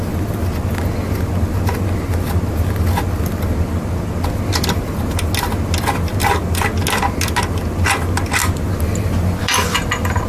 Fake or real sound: real